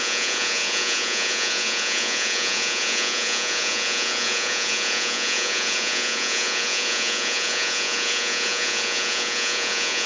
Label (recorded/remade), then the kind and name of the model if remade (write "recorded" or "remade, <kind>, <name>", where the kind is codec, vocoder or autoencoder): remade, vocoder, Vocos